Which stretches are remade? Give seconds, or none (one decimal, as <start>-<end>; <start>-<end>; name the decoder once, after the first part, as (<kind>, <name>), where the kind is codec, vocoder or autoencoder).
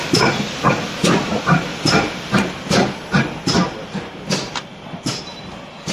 1.7-5.2 (vocoder, BigVGAN v2)